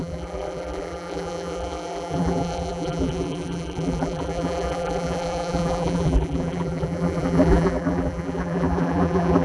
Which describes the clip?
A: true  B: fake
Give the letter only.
B